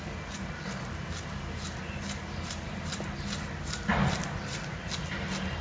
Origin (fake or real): real